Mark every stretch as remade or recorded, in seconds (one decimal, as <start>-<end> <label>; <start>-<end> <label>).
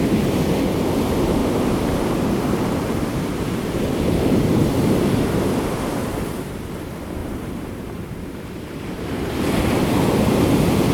0.0-1.4 recorded; 1.4-6.3 remade; 6.3-7.2 recorded; 7.2-9.5 remade; 9.5-10.9 recorded